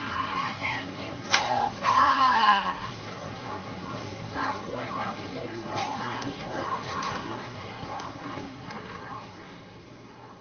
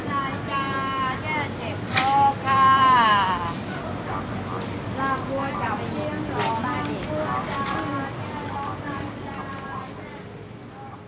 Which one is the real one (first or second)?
second